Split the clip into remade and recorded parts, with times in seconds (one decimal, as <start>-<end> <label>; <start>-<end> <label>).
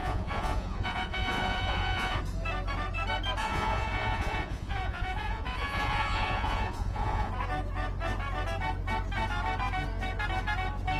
0.0-2.2 remade; 2.2-3.4 recorded; 3.4-7.3 remade; 7.3-11.0 recorded